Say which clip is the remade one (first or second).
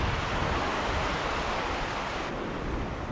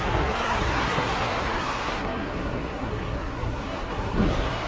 second